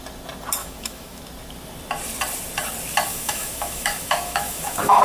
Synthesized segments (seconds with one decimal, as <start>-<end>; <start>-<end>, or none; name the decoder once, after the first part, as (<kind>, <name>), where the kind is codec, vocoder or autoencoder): 0.6-1.2 (autoencoder, DAC-VAE); 3.1-5.0